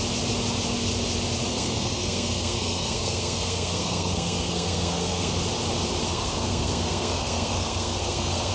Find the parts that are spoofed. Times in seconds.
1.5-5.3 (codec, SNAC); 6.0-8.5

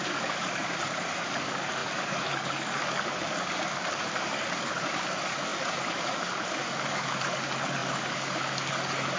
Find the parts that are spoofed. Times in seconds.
0.0-9.2 (codec, DAC)

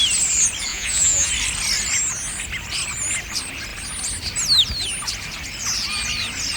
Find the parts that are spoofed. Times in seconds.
0.7-1.3 (vocoder, Vocos)

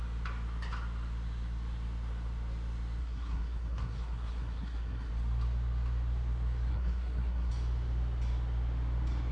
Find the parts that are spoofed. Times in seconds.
3.0-5.1 (codec, SNAC); 6.7-7.5

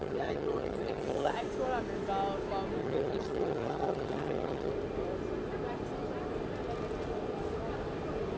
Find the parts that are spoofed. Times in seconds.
0.0-1.3 (vocoder, HiFi-GAN); 2.8-4.7

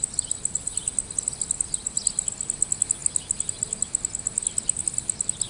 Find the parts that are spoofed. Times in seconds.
none